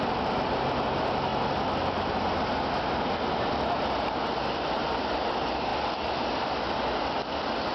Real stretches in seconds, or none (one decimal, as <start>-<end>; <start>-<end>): 0.0-7.7